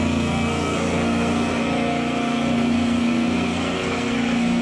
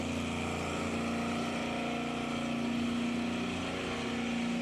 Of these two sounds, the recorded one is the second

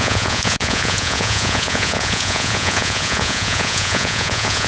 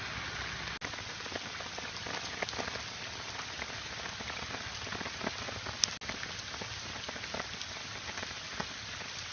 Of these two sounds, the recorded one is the second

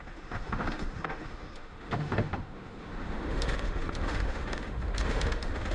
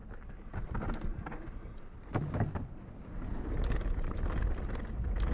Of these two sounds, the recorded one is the second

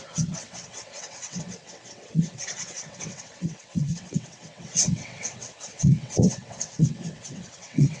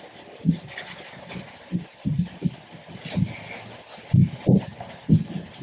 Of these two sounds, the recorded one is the second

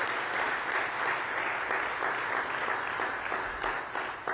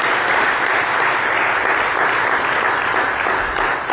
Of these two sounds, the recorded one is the first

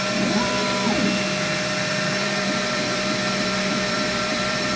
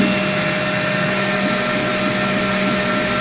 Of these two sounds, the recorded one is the second